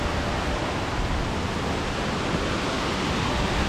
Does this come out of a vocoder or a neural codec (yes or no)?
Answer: no